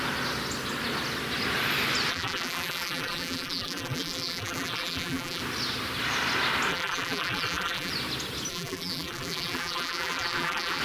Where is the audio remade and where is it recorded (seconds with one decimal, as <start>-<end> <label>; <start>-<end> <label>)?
0.0-2.1 recorded; 2.1-5.4 remade; 5.4-6.7 recorded; 6.7-7.9 remade; 7.9-8.5 recorded; 8.5-10.8 remade